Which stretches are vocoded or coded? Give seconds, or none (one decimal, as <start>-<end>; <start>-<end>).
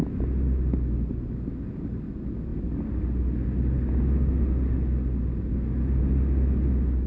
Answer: none